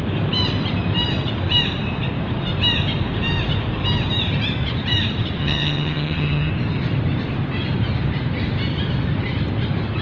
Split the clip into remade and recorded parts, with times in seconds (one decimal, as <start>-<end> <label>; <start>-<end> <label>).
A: 0.0-5.4 recorded; 5.4-6.5 remade; 6.5-10.0 recorded